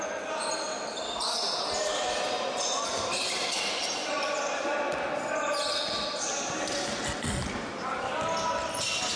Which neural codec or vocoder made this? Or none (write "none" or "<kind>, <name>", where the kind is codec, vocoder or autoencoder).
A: none